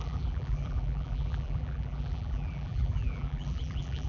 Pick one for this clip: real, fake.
fake